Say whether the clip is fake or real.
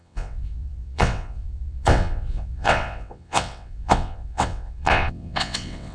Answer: fake